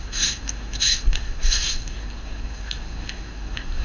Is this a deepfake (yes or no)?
yes